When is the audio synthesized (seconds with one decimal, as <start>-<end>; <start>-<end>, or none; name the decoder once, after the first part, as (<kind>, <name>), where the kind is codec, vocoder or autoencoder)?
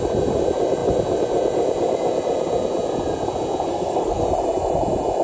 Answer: 3.7-4.2 (codec, SNAC)